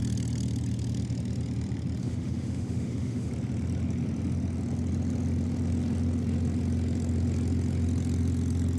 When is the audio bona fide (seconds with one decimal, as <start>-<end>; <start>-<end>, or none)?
0.0-2.0; 3.3-8.8